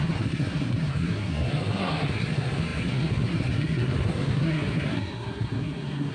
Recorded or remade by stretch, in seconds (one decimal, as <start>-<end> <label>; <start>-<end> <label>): 0.0-6.1 remade